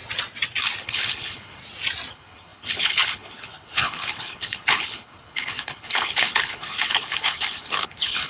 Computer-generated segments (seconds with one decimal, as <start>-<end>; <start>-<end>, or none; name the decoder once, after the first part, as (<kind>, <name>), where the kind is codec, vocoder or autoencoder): 0.8-1.6 (codec, HILCodec); 2.1-8.3